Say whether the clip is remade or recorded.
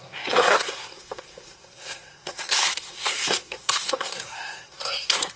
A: remade